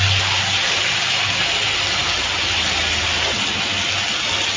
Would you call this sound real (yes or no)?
yes